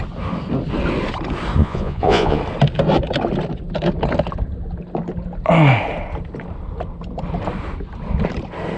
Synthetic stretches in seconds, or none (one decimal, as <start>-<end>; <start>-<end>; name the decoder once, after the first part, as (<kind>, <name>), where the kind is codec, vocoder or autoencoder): 1.6-2.4 (vocoder, Vocos)